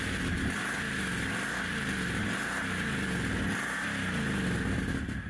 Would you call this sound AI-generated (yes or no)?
no